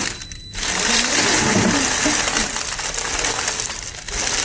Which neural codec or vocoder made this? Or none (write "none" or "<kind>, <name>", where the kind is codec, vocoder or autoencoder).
none